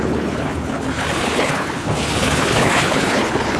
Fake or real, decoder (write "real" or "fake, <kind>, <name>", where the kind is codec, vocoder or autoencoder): fake, codec, HILCodec